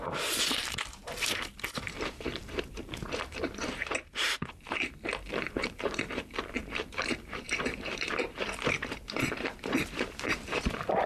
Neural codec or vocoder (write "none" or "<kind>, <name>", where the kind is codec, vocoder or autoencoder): vocoder, BigVGAN v2